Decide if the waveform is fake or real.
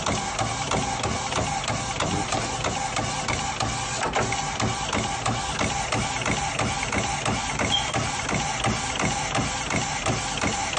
real